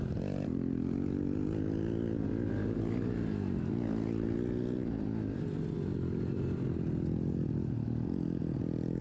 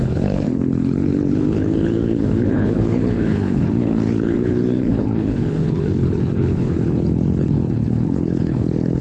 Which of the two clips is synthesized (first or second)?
second